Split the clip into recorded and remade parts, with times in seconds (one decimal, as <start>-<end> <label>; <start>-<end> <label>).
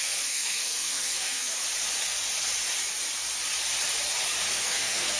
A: 0.0-1.6 remade; 1.6-4.5 recorded; 4.5-5.2 remade